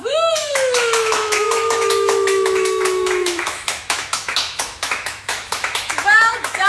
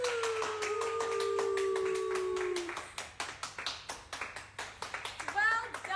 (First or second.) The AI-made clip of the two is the first